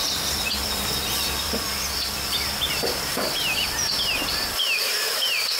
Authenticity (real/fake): fake